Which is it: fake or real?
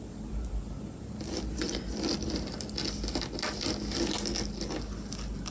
real